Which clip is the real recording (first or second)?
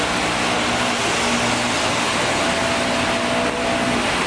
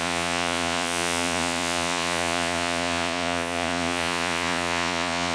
first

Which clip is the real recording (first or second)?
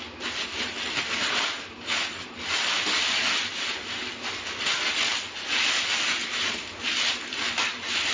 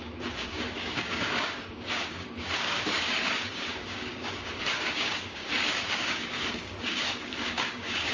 first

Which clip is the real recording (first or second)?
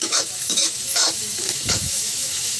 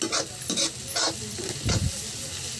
second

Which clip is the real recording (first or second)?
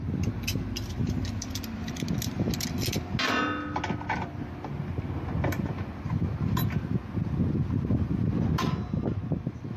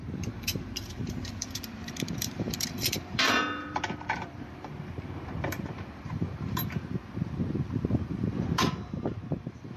first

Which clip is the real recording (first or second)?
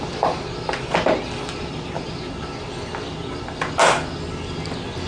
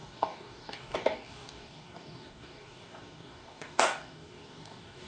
first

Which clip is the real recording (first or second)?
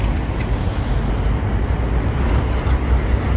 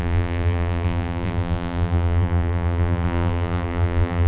first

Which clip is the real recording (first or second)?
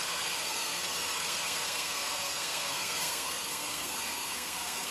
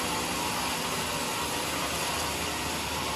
second